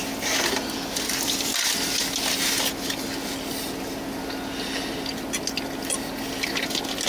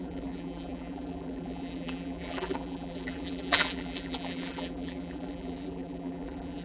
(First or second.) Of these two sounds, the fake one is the second